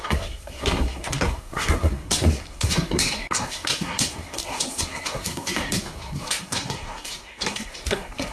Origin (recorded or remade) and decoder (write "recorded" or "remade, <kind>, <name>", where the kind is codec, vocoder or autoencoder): remade, codec, SNAC